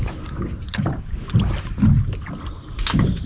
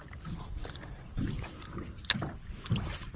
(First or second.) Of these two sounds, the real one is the first